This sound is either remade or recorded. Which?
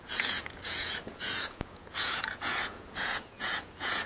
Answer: remade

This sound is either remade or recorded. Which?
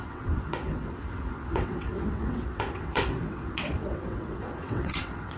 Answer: remade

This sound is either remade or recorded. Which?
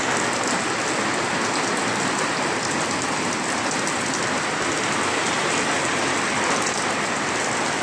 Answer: recorded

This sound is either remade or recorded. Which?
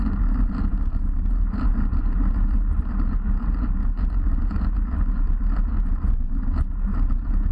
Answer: recorded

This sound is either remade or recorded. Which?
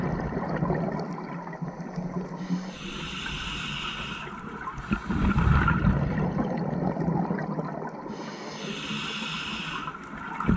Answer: recorded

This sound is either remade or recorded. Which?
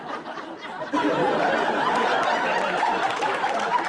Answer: recorded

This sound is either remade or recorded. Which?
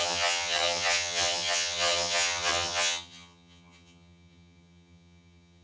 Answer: remade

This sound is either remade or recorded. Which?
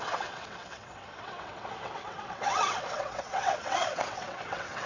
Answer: remade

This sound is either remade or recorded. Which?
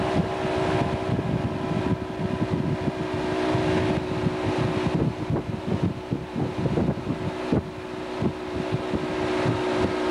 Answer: recorded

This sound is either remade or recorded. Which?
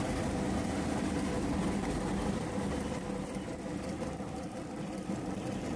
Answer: remade